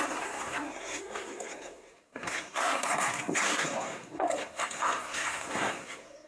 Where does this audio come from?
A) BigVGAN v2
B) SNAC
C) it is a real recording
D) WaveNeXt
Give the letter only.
B